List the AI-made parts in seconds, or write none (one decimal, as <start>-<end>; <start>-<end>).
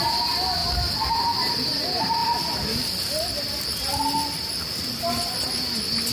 0.6-1.8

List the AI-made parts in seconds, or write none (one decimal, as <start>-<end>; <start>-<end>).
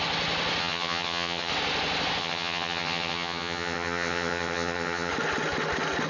0.6-1.5; 2.2-5.1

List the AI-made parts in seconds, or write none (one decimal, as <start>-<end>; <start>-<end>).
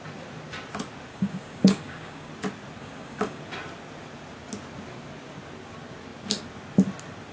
1.1-2.3; 2.8-3.4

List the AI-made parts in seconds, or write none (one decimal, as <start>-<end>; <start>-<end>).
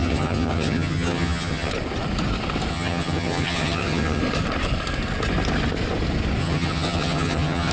0.0-1.7; 2.7-4.2; 6.4-7.7